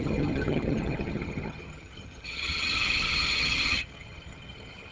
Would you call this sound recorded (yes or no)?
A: no